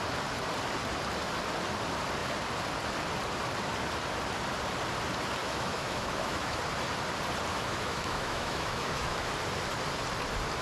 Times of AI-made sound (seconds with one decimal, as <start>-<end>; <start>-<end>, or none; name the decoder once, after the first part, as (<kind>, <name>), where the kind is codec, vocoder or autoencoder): 5.4-6.6 (autoencoder, DAC-VAE); 7.5-9.3